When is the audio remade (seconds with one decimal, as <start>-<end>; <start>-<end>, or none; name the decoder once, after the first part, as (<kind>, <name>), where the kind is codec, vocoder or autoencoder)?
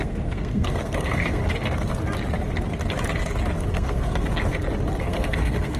0.0-1.4 (codec, SNAC); 3.7-4.3; 5.0-5.8